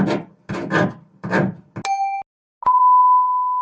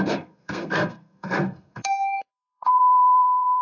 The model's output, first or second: second